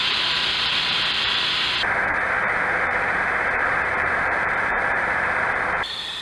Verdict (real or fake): fake